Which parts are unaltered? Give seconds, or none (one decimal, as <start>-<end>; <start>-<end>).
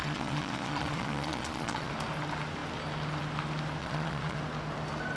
1.9-3.8; 4.4-5.2